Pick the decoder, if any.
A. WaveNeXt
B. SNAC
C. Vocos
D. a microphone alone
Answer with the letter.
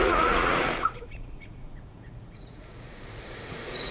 C